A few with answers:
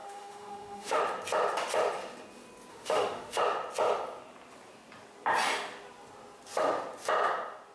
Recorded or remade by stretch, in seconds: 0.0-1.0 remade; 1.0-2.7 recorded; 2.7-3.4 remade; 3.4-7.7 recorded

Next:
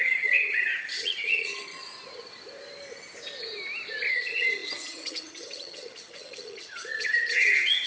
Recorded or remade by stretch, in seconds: 0.0-1.8 remade; 1.8-4.1 recorded; 4.1-7.9 remade

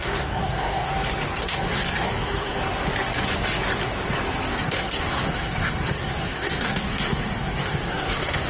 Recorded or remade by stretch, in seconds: 0.0-0.9 remade; 0.9-1.4 recorded; 1.4-2.6 remade; 2.6-4.5 recorded; 4.5-8.5 remade

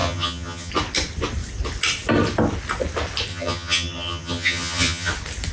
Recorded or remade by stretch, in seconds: 0.0-0.7 remade; 0.7-3.3 recorded; 3.3-5.1 remade; 5.1-5.5 recorded

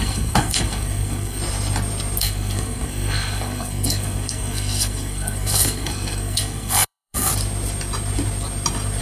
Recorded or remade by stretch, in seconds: 0.0-1.4 remade; 1.4-2.2 recorded; 2.2-7.3 remade; 7.3-9.0 recorded

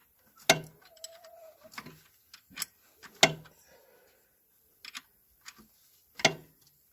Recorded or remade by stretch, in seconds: 0.0-6.9 recorded

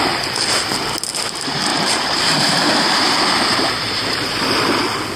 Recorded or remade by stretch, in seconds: 0.0-1.7 recorded; 1.7-4.8 remade; 4.8-5.2 recorded